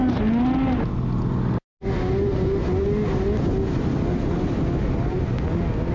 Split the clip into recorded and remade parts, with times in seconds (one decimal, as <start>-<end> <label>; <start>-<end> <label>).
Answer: 0.0-5.9 recorded